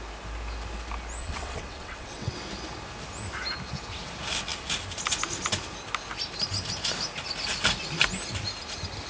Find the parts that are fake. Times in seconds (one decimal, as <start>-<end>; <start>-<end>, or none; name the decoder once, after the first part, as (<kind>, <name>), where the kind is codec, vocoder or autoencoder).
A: 1.2-2.4 (vocoder, WaveNeXt)

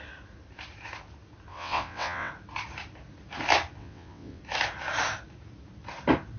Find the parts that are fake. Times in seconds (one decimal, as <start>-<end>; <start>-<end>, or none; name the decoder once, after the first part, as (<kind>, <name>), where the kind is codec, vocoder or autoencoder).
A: 1.5-2.3 (vocoder, WaveNeXt); 3.8-4.4

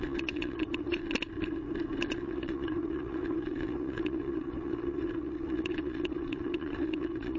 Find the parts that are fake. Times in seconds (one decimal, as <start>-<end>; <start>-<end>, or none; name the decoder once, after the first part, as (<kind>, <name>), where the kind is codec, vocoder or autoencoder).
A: 0.0-1.0 (vocoder, WaveNeXt); 2.1-7.4

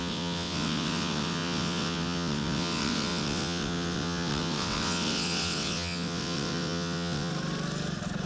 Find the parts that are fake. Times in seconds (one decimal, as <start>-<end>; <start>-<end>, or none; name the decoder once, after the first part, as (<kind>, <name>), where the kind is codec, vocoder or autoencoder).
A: 0.0-7.3 (vocoder, WaveNeXt)

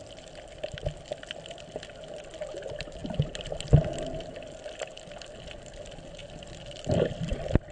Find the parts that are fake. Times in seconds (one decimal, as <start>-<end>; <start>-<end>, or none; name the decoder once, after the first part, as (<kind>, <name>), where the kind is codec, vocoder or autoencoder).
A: none